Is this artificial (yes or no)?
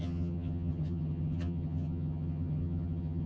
yes